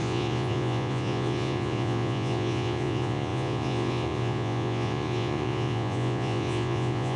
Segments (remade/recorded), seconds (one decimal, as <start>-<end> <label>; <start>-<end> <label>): 0.0-7.2 remade

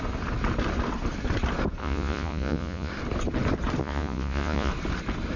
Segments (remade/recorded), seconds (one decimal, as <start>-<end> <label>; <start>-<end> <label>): 0.0-1.8 recorded; 1.8-2.9 remade; 2.9-3.8 recorded; 3.8-4.7 remade; 4.7-5.4 recorded

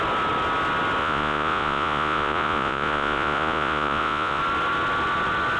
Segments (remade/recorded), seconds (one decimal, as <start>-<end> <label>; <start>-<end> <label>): 0.0-1.0 recorded; 1.0-4.4 remade; 4.4-5.6 recorded

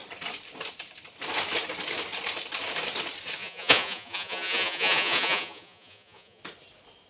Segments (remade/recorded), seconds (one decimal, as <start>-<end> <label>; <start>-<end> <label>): 0.0-3.4 recorded; 3.4-6.4 remade; 6.4-7.1 recorded

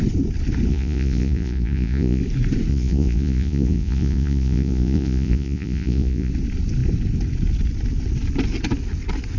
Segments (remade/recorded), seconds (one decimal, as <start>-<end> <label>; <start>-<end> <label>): 0.0-0.7 recorded; 0.7-2.2 remade; 2.2-2.7 recorded; 2.7-6.3 remade; 6.3-9.4 recorded

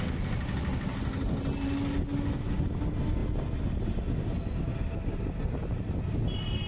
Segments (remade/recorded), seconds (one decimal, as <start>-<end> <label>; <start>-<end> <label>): 0.0-6.7 recorded

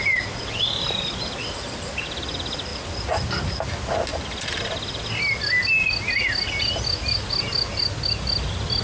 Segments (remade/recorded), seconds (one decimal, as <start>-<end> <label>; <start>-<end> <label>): 0.0-8.8 recorded